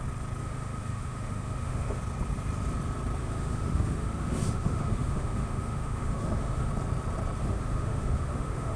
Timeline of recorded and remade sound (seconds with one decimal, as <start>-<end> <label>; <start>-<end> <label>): 0.0-0.4 recorded; 0.4-2.0 remade; 2.0-3.2 recorded; 3.2-6.7 remade; 6.7-7.4 recorded; 7.4-8.8 remade

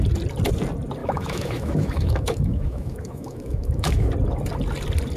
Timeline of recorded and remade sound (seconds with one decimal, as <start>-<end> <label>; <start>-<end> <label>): 0.0-1.0 recorded; 1.0-4.1 remade; 4.1-5.2 recorded

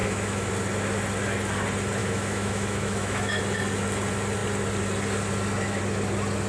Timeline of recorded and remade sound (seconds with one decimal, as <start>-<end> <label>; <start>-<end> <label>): 0.0-0.5 remade; 0.5-2.0 recorded; 2.0-3.4 remade; 3.4-6.5 recorded

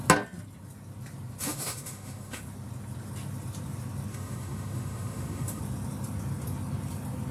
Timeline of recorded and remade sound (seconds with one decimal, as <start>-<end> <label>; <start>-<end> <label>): 0.0-1.4 recorded; 1.4-2.4 remade; 2.4-4.1 recorded; 4.1-5.6 remade; 5.6-7.3 recorded

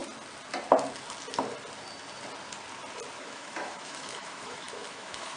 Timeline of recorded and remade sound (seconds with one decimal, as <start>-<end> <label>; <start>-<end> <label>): 0.0-3.2 recorded; 3.2-5.4 remade